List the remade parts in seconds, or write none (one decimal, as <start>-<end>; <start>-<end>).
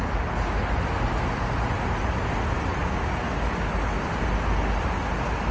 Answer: 2.8-3.3